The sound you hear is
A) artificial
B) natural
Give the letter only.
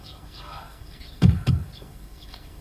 A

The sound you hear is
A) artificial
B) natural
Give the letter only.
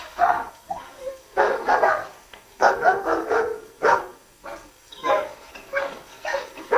A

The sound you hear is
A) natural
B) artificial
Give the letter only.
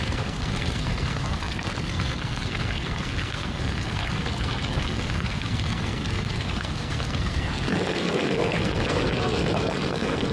B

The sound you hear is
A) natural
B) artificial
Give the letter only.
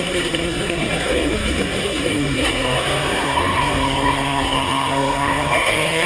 B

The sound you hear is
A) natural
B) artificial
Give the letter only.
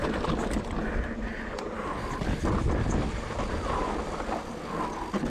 A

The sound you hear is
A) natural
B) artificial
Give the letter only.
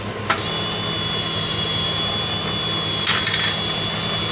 A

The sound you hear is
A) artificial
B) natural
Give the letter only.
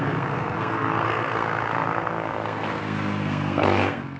A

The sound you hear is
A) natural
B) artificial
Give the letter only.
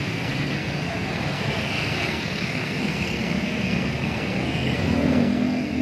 B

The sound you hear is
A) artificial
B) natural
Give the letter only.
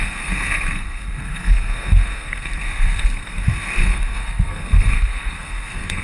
A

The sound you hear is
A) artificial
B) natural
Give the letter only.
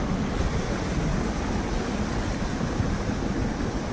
B